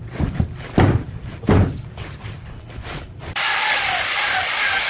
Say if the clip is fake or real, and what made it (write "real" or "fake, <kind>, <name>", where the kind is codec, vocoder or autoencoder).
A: real